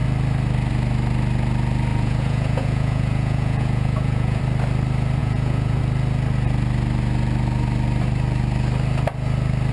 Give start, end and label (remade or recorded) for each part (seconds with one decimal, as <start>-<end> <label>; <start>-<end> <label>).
0.0-1.9 recorded; 1.9-4.4 remade; 4.4-5.2 recorded; 5.2-5.8 remade; 5.8-9.7 recorded